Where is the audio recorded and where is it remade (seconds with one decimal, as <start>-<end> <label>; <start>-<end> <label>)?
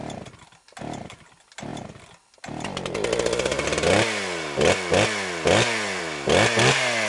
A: 0.0-7.1 recorded